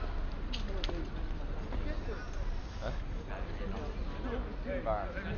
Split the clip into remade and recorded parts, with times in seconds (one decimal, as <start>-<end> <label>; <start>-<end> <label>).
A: 0.0-2.6 recorded; 2.6-3.3 remade; 3.3-5.4 recorded